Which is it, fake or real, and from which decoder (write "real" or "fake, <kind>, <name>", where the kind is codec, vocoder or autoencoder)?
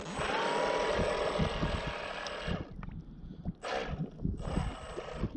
real